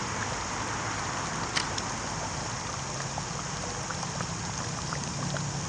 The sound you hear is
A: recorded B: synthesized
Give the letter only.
A